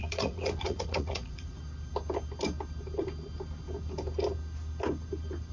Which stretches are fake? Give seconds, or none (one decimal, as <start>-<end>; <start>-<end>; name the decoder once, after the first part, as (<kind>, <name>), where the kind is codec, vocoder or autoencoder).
0.0-1.6 (vocoder, Vocos)